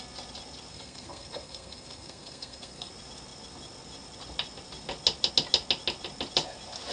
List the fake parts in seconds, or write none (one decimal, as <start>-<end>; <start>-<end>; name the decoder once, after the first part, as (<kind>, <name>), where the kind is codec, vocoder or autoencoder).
0.7-2.9 (codec, SNAC)